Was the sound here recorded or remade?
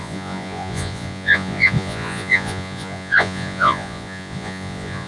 remade